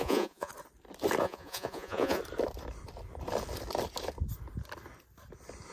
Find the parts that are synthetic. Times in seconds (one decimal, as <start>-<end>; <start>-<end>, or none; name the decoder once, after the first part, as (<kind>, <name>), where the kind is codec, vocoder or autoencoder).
0.0-0.5 (vocoder, Vocos); 1.2-2.2